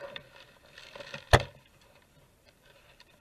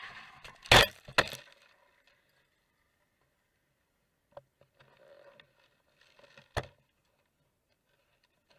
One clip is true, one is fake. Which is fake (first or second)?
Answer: first